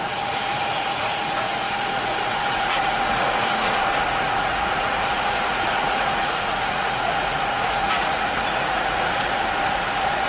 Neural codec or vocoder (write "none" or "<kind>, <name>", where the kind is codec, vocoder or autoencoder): vocoder, Vocos